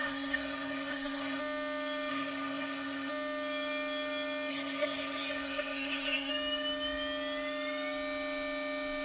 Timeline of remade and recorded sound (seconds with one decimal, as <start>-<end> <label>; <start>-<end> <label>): 0.0-1.4 remade; 1.4-2.1 recorded; 2.1-3.1 remade; 3.1-4.5 recorded; 4.5-6.3 remade; 6.3-9.0 recorded